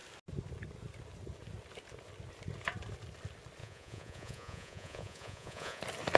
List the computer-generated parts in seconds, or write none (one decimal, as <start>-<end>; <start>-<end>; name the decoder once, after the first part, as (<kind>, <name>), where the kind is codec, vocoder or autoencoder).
3.6-5.8 (vocoder, Vocos)